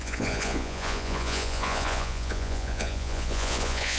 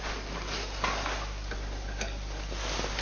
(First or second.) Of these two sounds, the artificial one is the first